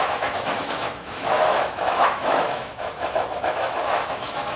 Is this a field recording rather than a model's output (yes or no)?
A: no